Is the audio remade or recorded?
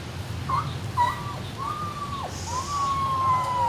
recorded